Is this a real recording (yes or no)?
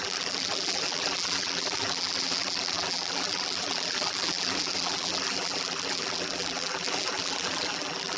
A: no